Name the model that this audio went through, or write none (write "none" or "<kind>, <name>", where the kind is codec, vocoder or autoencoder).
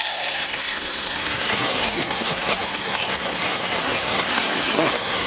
codec, SNAC